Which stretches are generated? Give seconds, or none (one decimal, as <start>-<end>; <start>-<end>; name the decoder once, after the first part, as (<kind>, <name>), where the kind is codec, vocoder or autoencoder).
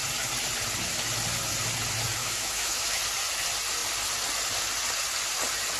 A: 2.2-3.0 (autoencoder, DAC-VAE)